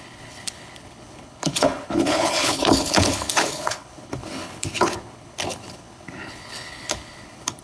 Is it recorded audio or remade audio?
remade